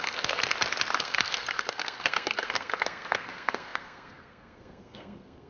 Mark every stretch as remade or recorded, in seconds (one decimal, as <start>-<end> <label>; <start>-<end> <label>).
0.0-0.4 remade; 0.4-1.0 recorded; 1.0-5.5 remade